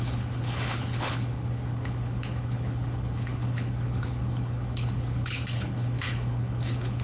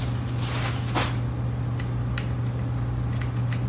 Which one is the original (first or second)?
second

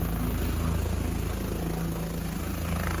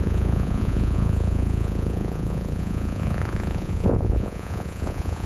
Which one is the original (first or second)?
first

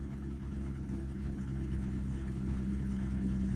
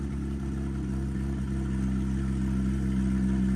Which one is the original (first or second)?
second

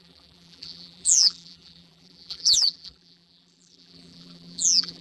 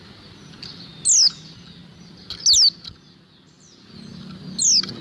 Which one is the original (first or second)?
second